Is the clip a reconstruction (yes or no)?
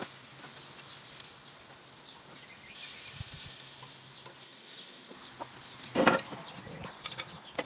no